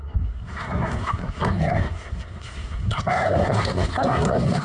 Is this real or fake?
fake